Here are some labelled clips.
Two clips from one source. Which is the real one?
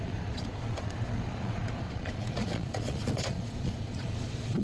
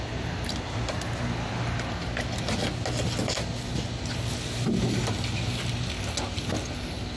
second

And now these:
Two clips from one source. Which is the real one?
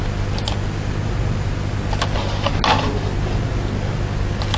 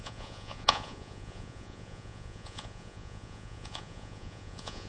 first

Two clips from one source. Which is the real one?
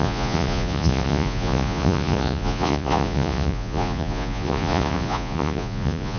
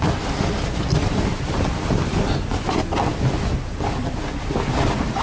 second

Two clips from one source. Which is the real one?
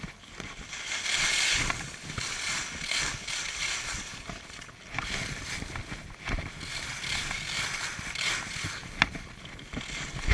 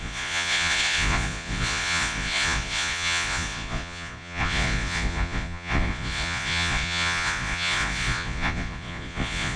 first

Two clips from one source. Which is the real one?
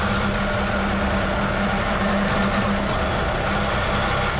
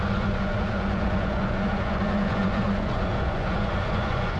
first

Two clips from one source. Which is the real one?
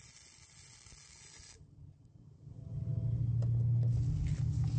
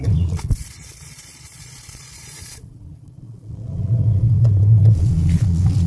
first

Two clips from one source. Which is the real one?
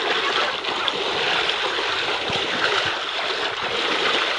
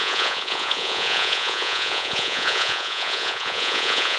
first